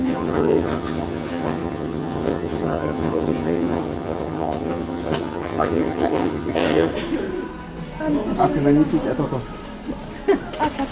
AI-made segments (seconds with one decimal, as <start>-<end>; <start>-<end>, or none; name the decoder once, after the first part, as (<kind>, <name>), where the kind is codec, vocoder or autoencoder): 0.0-6.9 (vocoder, HiFi-GAN)